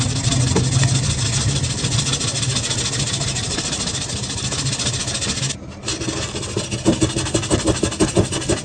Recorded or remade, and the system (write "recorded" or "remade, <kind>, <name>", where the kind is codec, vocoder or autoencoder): recorded